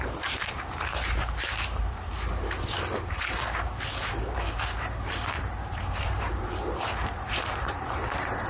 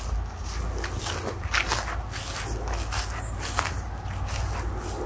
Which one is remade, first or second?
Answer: first